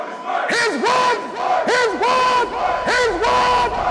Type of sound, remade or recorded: recorded